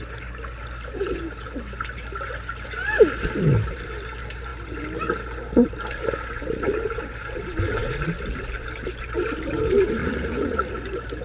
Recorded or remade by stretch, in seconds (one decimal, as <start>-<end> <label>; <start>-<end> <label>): 0.0-10.0 recorded; 10.0-10.7 remade; 10.7-11.2 recorded